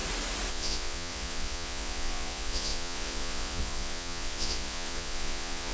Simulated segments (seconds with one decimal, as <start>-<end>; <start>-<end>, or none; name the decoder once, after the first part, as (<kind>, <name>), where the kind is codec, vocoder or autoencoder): 0.5-5.7 (vocoder, Vocos)